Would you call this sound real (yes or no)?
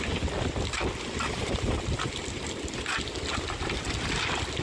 yes